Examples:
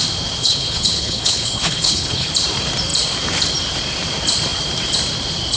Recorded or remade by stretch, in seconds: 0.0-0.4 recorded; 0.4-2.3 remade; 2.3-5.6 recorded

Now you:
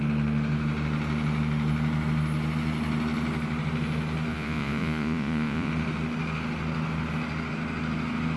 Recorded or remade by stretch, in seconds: 0.0-4.3 recorded; 4.3-5.7 remade; 5.7-8.4 recorded